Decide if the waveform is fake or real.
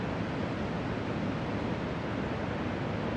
real